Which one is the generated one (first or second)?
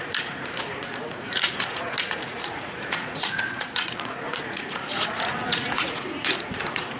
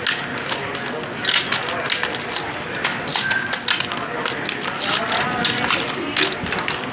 first